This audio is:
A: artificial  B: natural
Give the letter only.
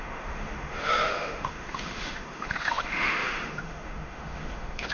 A